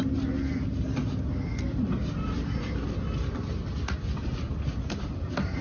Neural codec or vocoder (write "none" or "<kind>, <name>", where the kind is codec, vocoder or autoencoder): none